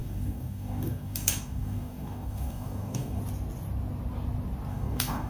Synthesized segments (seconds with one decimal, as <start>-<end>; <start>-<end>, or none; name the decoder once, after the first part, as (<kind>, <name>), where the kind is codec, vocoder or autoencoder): 0.0-3.2 (codec, DAC); 4.7-5.3